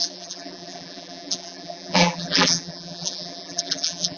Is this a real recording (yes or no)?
no